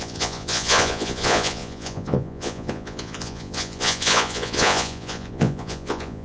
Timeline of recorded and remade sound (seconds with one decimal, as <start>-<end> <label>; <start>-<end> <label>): 0.0-6.2 remade